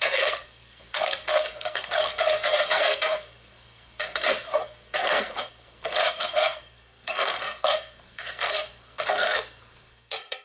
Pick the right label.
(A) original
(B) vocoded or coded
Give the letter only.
B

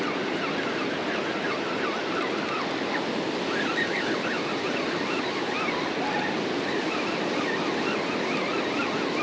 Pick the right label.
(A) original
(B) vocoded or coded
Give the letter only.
A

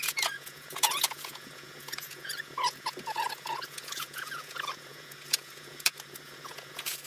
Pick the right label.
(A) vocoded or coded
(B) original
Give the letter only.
A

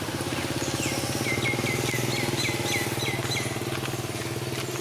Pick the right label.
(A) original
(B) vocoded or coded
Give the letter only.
A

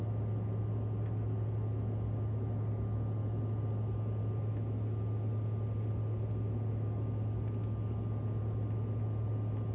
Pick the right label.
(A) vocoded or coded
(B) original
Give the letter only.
B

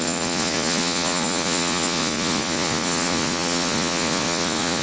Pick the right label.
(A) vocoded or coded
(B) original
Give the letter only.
A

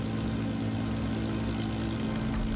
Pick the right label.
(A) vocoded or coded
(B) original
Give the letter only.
B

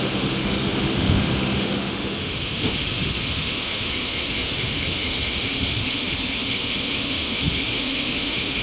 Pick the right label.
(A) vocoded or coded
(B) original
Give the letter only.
A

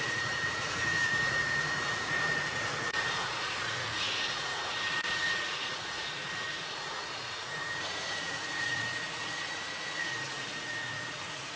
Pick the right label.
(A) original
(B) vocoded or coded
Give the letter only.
B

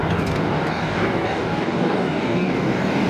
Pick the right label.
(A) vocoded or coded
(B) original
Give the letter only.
A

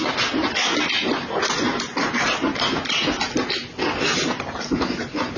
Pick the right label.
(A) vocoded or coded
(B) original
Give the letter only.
B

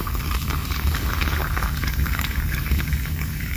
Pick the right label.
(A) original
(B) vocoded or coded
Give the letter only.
B